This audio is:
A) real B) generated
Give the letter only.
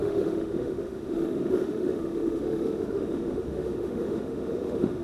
B